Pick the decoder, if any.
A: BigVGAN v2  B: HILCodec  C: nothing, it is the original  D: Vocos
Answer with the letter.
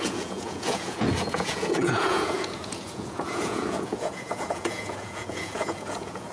D